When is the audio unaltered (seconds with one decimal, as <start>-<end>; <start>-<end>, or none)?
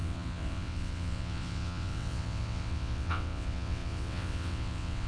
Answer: none